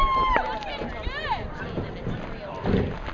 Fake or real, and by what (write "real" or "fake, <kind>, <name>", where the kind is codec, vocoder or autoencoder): real